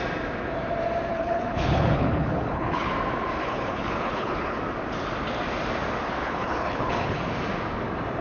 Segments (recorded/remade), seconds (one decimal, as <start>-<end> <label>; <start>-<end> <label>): 0.0-1.1 recorded; 1.1-2.9 remade; 2.9-3.4 recorded; 3.4-4.6 remade; 4.6-6.2 recorded; 6.2-7.2 remade; 7.2-8.2 recorded